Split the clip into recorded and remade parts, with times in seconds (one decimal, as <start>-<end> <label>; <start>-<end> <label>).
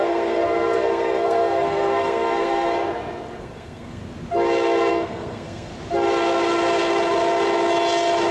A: 0.0-2.7 remade; 2.7-3.4 recorded; 3.4-4.0 remade; 4.0-4.9 recorded; 4.9-5.7 remade; 5.7-8.3 recorded